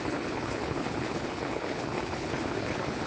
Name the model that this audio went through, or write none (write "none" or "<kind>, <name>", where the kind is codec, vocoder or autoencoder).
codec, HILCodec